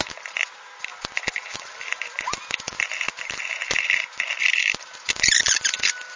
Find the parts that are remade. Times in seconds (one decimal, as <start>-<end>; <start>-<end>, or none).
none